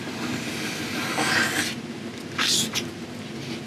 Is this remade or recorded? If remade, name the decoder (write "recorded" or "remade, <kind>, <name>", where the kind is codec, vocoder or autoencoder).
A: recorded